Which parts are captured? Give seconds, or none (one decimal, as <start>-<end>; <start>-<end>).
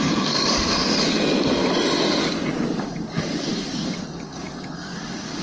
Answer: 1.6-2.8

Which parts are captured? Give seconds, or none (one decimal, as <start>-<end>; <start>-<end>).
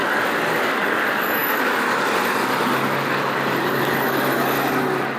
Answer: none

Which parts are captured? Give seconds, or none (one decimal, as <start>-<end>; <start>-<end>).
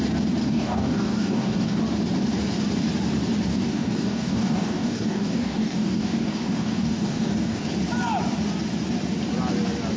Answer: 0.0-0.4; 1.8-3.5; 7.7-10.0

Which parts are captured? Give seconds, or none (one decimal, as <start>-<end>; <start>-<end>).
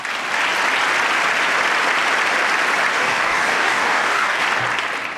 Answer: 0.0-2.9; 4.4-5.2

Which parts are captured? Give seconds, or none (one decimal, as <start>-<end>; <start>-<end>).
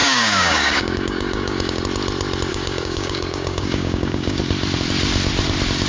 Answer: 1.8-2.5; 4.4-5.9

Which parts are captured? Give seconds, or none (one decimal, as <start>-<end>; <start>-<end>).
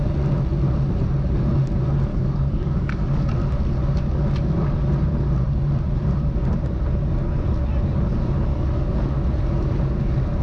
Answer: 0.0-2.1; 3.3-8.5; 9.0-10.4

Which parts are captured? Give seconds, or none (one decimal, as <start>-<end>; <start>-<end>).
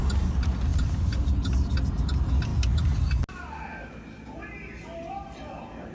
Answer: 0.0-5.9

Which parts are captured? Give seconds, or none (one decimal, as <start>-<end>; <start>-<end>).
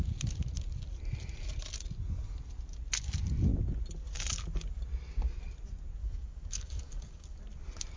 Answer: 0.0-6.0; 7.4-8.0